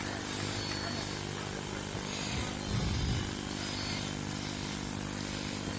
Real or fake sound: real